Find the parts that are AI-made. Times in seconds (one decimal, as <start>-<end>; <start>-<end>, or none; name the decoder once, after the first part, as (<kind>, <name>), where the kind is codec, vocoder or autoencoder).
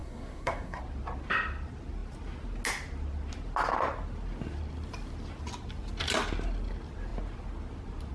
0.0-0.8 (codec, SNAC)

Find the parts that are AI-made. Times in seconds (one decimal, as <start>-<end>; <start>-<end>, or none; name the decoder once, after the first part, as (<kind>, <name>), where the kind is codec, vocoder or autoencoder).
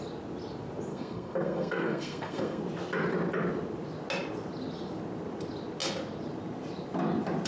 0.9-2.6 (codec, SNAC)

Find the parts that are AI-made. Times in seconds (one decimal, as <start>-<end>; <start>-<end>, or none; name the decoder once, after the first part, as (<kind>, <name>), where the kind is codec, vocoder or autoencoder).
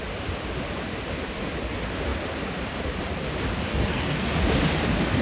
3.7-4.4 (codec, SNAC)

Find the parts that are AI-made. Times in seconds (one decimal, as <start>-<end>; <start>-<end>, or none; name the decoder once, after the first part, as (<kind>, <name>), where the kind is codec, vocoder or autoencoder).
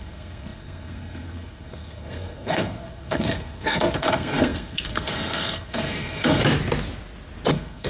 0.0-6.4 (codec, SNAC); 7.5-7.9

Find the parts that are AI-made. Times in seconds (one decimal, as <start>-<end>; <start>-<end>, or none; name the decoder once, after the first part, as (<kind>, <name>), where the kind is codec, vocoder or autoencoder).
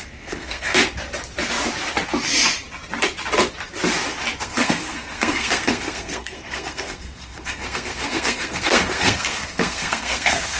0.0-0.8 (codec, SNAC); 4.4-10.6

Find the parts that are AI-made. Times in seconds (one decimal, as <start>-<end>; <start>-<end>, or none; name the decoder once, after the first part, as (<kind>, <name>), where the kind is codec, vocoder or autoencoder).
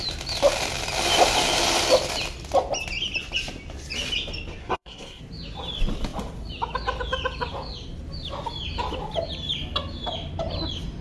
4.6-5.2 (codec, SNAC)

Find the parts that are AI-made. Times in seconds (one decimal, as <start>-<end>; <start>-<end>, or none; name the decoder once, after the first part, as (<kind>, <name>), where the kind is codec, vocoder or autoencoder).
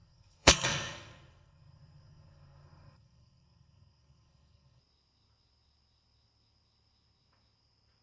0.0-4.8 (codec, SNAC)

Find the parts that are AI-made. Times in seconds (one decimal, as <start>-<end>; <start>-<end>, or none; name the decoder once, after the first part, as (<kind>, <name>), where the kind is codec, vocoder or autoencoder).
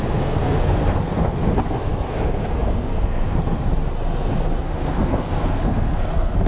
0.0-3.7 (codec, SNAC); 4.7-6.5